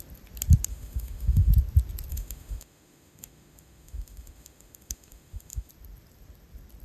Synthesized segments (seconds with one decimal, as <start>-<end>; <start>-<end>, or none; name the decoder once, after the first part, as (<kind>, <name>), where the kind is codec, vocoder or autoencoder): 0.7-1.5 (autoencoder, DAC-VAE); 2.1-5.7